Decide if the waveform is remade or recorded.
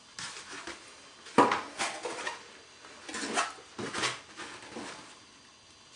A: recorded